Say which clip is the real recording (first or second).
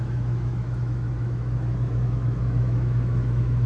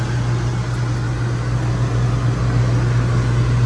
second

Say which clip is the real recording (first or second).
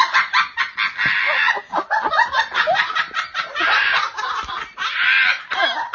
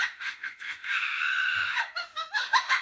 first